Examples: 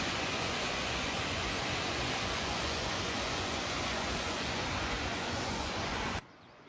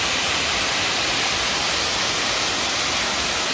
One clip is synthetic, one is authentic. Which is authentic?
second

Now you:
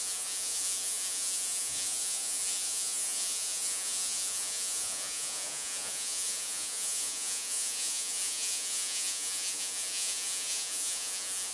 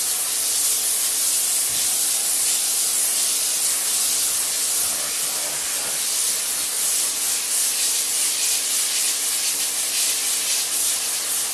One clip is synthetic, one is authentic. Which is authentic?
second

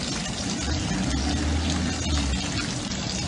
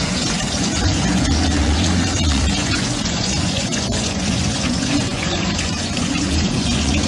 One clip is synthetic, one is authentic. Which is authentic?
first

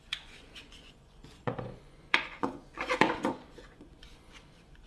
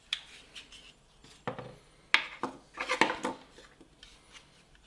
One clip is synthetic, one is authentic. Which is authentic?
second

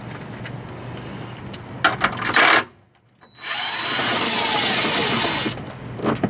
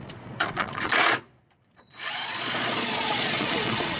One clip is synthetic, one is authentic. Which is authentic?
first